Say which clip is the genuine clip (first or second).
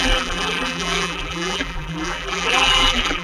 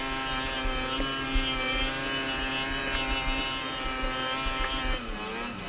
second